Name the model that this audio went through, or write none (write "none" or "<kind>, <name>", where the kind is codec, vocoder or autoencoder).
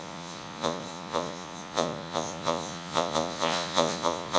vocoder, Vocos